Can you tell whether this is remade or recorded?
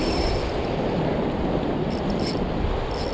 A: recorded